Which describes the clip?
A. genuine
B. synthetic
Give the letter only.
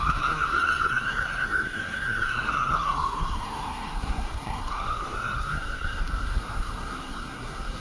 B